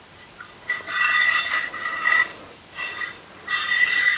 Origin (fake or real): real